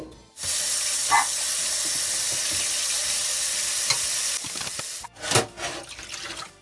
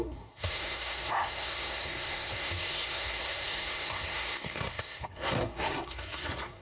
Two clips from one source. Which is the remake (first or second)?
second